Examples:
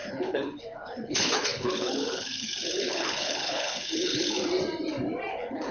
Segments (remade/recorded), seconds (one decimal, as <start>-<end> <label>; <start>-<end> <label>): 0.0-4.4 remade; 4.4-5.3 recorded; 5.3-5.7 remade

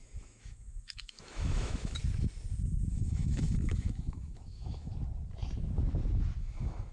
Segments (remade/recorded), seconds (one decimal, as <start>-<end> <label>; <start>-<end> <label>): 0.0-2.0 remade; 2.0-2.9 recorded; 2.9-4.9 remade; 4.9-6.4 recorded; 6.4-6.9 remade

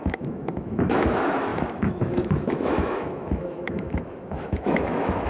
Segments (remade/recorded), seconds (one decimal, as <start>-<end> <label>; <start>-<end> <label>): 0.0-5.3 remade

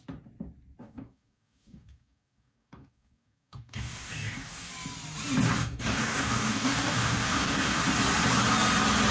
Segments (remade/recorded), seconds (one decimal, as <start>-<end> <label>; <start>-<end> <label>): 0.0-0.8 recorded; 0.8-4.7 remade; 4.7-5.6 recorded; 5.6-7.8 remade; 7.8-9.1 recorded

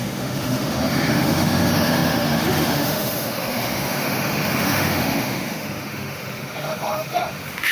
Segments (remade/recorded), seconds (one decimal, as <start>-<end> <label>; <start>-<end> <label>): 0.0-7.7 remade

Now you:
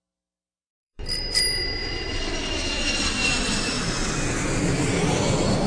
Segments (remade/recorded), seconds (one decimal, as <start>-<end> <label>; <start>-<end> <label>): 0.0-0.7 recorded; 0.7-2.3 remade; 2.3-5.7 recorded

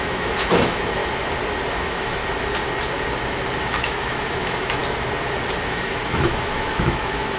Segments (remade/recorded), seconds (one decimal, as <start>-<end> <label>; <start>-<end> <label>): 0.0-1.0 remade; 1.0-1.7 recorded; 1.7-2.2 remade; 2.2-3.6 recorded; 3.6-4.8 remade; 4.8-5.6 recorded; 5.6-7.4 remade